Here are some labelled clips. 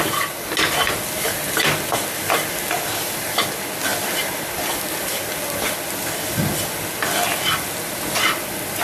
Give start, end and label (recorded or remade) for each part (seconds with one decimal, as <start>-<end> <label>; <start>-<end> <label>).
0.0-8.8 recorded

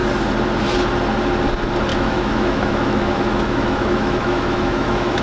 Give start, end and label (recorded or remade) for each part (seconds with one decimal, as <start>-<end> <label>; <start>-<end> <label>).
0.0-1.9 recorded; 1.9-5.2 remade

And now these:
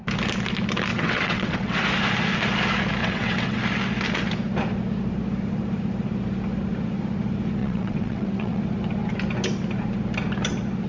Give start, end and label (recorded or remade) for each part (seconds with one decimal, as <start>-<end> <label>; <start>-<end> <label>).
0.0-0.9 recorded; 0.9-1.8 remade; 1.8-3.0 recorded; 3.0-3.6 remade; 3.6-7.6 recorded; 7.6-8.6 remade; 8.6-10.9 recorded

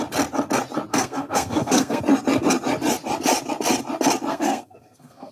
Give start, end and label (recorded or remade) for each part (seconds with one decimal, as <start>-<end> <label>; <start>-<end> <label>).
0.0-0.9 recorded; 0.9-2.0 remade; 2.0-4.3 recorded; 4.3-5.3 remade